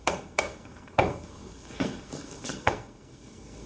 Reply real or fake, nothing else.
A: fake